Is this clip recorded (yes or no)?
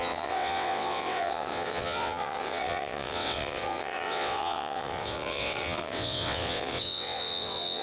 no